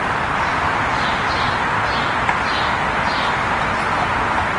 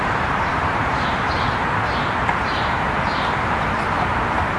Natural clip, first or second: first